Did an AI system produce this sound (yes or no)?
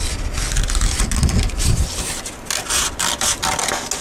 no